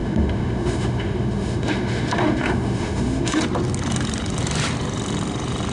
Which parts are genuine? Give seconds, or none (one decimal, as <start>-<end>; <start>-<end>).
3.4-5.7